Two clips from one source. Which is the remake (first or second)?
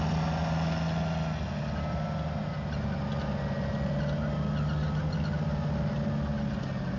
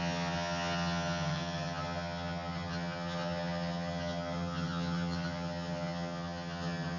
second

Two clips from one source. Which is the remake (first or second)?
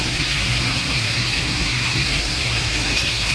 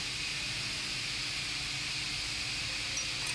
first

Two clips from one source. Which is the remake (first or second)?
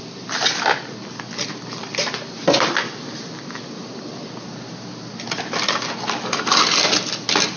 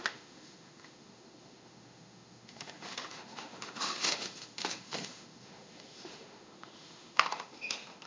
second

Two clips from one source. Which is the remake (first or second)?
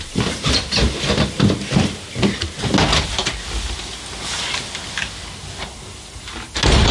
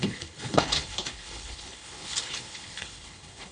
second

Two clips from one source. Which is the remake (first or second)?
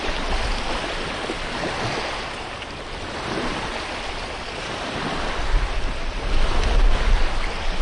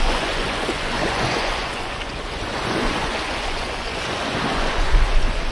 second